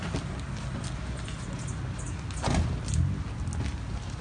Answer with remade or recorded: recorded